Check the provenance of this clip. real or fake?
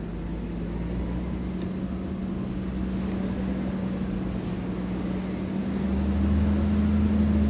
real